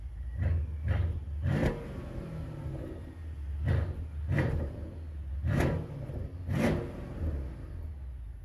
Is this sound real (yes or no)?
yes